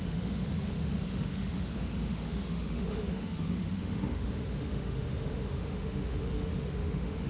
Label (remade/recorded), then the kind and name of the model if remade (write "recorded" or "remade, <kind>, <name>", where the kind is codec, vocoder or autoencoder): remade, autoencoder, DAC-VAE